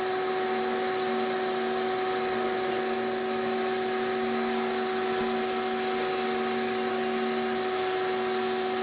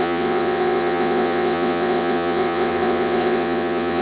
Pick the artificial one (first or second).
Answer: second